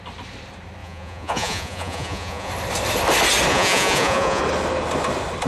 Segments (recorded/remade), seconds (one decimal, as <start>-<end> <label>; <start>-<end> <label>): 0.0-0.8 recorded; 0.8-2.5 remade; 2.5-3.5 recorded; 3.5-4.4 remade; 4.4-5.5 recorded